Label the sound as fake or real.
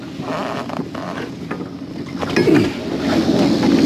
real